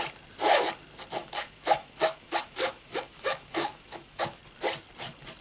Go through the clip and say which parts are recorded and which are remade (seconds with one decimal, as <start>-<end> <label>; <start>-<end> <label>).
0.0-1.2 recorded; 1.2-4.4 remade; 4.4-5.4 recorded